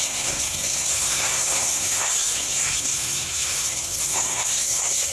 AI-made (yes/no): yes